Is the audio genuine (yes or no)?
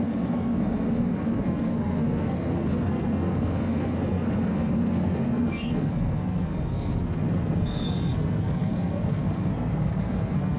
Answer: no